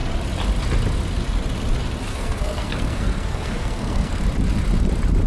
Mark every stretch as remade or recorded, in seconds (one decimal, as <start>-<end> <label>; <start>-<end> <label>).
0.0-2.1 recorded; 2.1-4.2 remade; 4.2-5.3 recorded